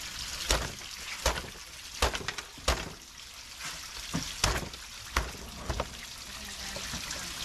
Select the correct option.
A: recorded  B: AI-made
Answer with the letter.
A